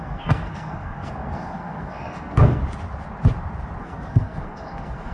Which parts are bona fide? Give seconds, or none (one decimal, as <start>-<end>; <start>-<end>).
2.6-3.8